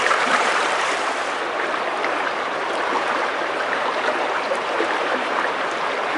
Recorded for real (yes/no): no